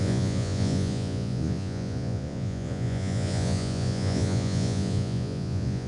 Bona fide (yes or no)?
no